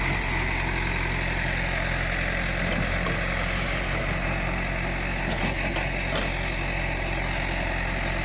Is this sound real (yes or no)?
yes